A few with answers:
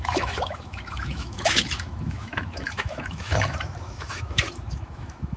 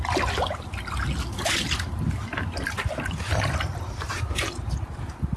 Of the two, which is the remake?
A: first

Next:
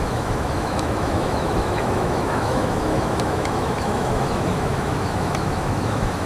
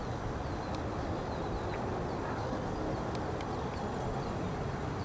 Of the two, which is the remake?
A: first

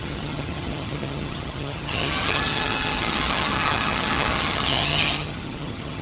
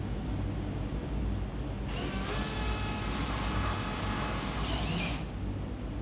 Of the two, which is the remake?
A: first